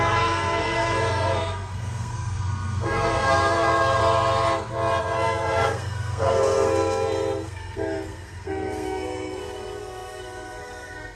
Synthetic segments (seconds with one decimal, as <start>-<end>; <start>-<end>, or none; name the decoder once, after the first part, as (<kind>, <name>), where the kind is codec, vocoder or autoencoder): 0.0-4.0 (codec, SNAC); 5.0-11.2